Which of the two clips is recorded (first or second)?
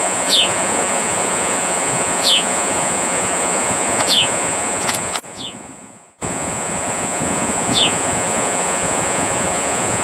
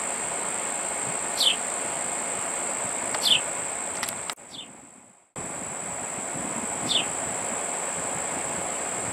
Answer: second